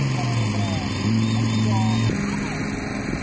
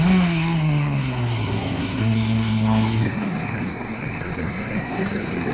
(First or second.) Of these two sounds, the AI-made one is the second